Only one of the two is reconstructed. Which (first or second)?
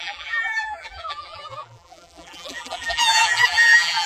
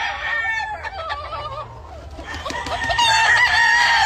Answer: first